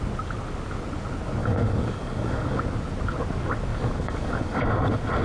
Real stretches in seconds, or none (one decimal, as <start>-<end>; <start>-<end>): 0.0-1.4; 2.6-3.7; 4.6-5.2